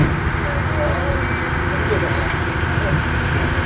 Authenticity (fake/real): real